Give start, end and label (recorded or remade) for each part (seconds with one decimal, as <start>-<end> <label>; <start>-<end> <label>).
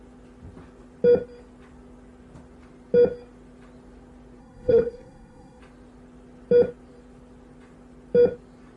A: 0.0-4.4 recorded; 4.4-5.6 remade; 5.6-8.8 recorded